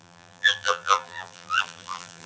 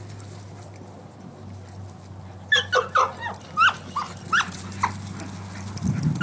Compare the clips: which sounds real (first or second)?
second